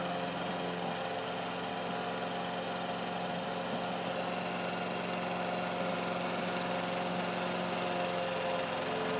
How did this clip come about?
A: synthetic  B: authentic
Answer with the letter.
B